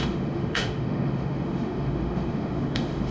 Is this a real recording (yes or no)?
no